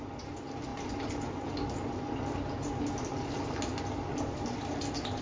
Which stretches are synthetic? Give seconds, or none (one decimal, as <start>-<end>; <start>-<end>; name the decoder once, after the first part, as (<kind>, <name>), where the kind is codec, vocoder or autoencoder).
none